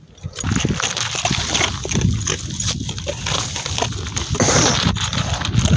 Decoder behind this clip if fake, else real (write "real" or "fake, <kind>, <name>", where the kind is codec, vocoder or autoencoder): real